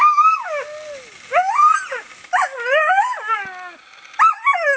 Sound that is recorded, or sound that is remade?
recorded